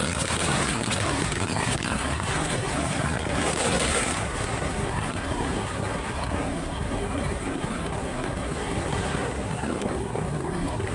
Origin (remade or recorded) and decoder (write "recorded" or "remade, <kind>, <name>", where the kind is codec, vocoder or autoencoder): remade, codec, SNAC